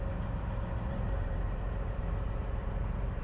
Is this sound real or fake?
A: fake